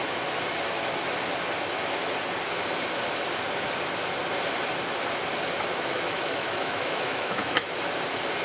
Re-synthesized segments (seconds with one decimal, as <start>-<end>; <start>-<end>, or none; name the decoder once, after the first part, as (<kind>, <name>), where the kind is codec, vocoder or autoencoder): 5.7-7.8 (autoencoder, DAC-VAE)